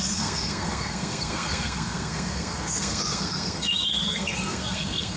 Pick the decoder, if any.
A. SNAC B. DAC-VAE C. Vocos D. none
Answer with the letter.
A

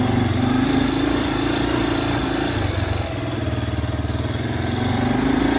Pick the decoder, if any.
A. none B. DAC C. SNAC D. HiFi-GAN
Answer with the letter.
A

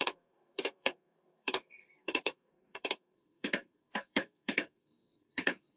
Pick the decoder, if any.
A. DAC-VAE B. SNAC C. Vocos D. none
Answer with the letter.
B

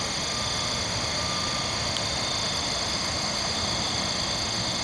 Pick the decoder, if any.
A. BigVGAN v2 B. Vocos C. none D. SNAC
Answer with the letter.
C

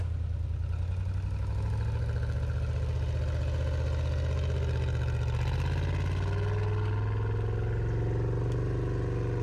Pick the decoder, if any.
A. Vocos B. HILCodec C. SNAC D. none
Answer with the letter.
D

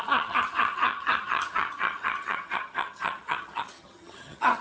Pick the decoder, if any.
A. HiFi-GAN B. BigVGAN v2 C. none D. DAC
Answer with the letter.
A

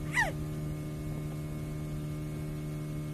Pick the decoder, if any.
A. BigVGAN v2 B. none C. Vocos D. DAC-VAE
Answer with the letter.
B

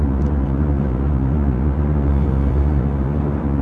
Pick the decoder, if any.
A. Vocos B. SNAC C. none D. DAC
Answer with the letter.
A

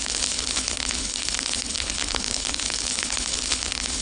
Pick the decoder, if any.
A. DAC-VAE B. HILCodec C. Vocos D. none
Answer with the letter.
B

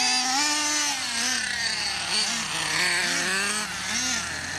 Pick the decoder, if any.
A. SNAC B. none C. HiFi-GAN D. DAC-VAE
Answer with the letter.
B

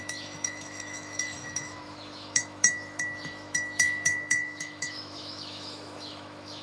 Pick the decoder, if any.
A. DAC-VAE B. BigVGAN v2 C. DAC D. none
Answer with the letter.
A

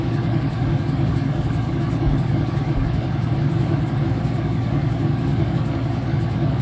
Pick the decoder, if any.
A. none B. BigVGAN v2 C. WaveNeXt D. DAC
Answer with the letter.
D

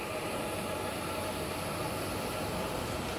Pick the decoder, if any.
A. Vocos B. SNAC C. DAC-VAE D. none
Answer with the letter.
D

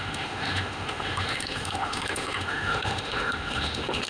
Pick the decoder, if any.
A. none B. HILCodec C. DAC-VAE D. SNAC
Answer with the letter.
C